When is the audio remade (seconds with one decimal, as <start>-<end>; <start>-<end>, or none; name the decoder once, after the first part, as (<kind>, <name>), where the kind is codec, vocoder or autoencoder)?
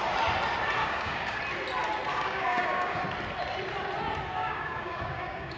0.8-1.4 (codec, DAC); 2.1-3.0; 4.4-5.6